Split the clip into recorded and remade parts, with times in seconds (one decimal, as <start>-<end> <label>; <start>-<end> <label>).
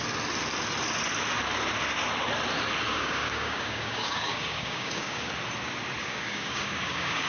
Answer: 0.0-2.9 recorded; 2.9-5.3 remade; 5.3-6.0 recorded; 6.0-7.3 remade